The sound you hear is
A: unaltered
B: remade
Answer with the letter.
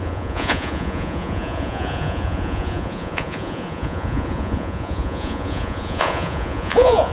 B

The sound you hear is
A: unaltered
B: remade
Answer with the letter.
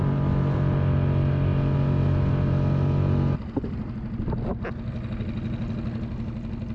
A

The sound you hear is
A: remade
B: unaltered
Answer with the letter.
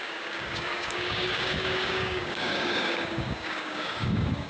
A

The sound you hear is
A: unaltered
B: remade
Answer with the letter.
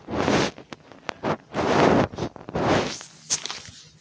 A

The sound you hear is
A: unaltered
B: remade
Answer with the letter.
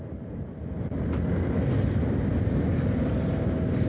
A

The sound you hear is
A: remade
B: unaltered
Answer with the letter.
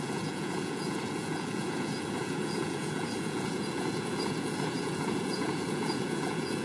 A